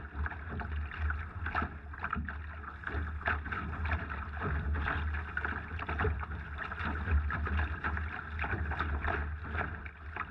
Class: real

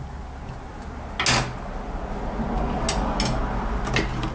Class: real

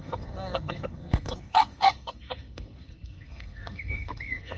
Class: fake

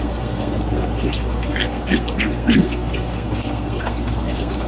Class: fake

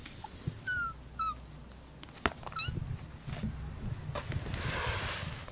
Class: real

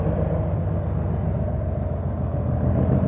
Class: real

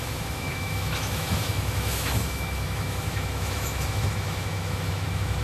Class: fake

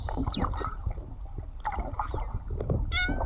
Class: real